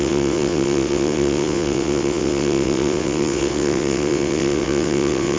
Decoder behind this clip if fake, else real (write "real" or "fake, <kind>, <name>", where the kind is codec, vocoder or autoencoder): fake, vocoder, WaveNeXt